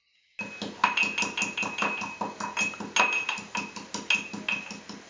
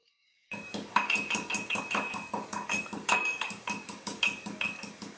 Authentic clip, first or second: first